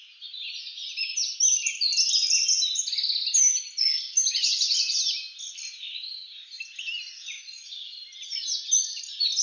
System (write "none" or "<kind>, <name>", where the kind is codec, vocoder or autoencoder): none